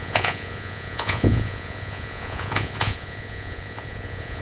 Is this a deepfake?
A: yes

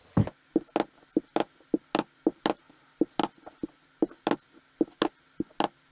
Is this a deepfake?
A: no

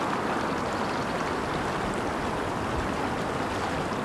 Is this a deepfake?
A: no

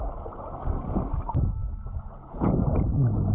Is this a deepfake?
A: no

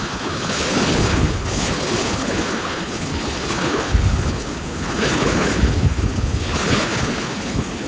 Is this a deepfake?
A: yes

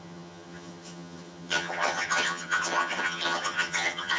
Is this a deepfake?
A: yes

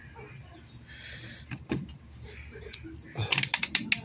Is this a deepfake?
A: no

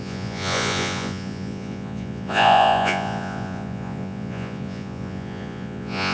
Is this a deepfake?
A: yes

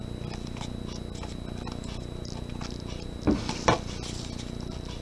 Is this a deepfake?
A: no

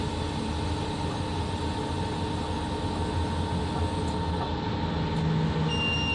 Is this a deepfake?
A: no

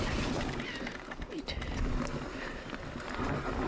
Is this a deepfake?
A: no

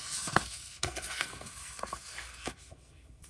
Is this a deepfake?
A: yes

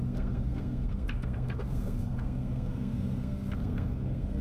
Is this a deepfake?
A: yes